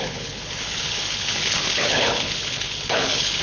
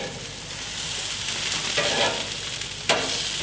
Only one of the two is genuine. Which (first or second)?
second